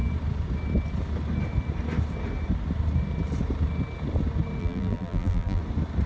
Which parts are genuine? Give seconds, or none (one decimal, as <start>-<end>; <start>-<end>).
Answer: 0.0-4.6; 5.6-6.1